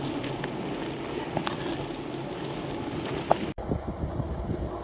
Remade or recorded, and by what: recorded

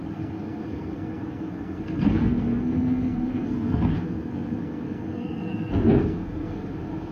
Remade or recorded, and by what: remade, codec, SNAC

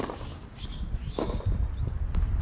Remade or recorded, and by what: recorded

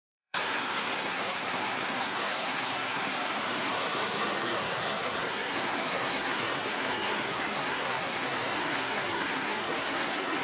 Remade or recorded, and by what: remade, codec, SNAC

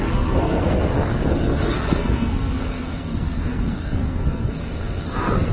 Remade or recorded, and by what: remade, codec, SNAC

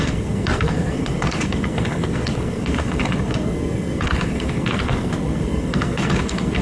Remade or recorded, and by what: remade, codec, SNAC